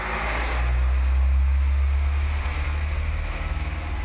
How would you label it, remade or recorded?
recorded